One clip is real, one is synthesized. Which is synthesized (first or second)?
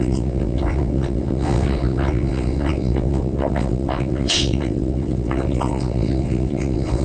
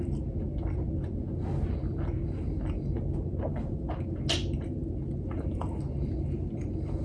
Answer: first